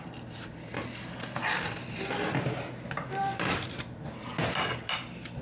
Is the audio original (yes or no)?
no